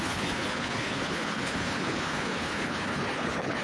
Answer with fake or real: fake